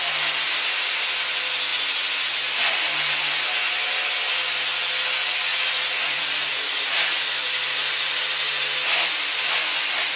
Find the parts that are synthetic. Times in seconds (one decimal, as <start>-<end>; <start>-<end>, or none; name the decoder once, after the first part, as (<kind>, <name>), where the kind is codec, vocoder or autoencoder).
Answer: 5.5-8.2 (vocoder, Vocos)